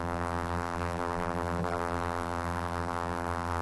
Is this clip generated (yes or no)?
yes